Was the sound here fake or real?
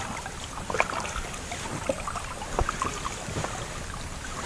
real